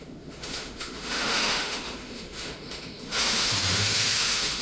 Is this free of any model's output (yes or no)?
no